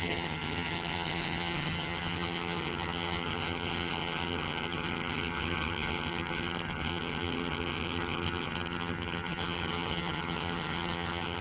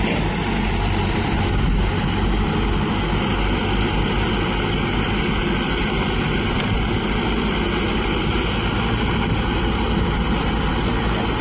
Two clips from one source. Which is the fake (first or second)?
first